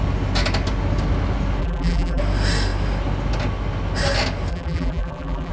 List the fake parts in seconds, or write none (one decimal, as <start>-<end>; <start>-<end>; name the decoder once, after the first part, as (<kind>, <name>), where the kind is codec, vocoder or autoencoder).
1.6-2.2 (vocoder, BigVGAN v2); 4.5-5.5